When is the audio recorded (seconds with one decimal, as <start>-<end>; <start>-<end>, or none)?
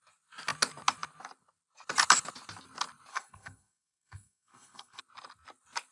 0.0-3.1; 5.0-5.9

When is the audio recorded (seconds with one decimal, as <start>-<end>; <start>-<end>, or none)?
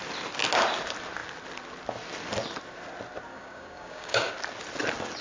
0.0-3.3; 4.3-5.2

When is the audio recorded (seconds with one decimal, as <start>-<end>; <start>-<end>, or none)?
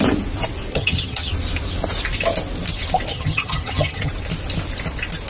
0.0-0.7; 1.3-3.1; 4.1-5.3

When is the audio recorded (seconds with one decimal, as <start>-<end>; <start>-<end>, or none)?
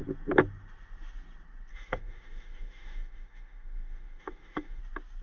0.0-1.7; 4.8-5.2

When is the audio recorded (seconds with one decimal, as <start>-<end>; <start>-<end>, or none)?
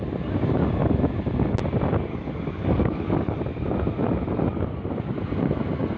0.0-2.1; 3.4-6.0